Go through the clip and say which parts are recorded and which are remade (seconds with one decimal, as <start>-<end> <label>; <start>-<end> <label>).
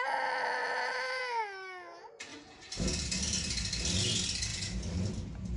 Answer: 0.0-0.6 recorded; 0.6-1.2 remade; 1.2-4.5 recorded; 4.5-5.1 remade; 5.1-5.6 recorded